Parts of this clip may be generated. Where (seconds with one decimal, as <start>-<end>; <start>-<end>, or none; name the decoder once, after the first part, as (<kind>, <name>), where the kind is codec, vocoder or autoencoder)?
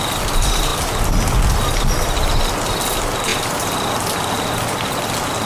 3.3-5.5 (vocoder, BigVGAN v2)